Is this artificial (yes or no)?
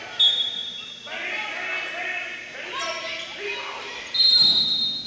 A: no